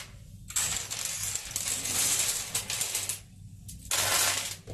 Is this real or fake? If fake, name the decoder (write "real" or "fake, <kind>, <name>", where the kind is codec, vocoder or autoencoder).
real